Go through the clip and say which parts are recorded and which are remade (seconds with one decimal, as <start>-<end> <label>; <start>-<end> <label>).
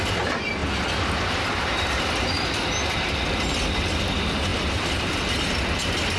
0.0-6.2 recorded